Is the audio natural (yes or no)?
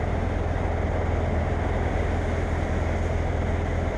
yes